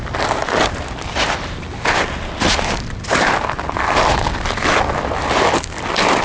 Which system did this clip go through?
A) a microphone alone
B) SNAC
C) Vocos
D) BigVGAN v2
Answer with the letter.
A